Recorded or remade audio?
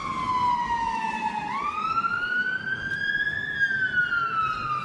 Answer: recorded